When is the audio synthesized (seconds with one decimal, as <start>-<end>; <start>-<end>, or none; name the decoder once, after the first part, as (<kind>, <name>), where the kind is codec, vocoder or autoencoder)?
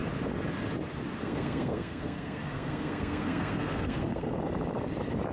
1.2-4.4 (codec, SNAC)